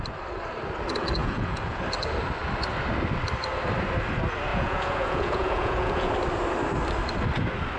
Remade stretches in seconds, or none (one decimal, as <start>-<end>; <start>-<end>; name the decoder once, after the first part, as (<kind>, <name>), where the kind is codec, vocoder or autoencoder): 1.2-1.8 (vocoder, Vocos); 4.5-6.1